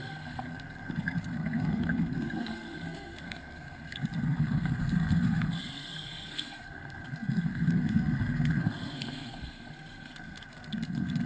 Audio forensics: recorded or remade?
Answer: remade